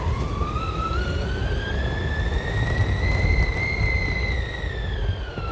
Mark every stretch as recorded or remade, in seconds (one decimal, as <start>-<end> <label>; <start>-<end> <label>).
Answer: 0.0-5.5 recorded